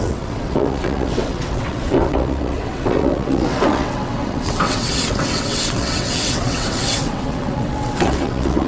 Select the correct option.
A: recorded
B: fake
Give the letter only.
B